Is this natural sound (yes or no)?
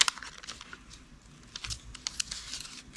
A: yes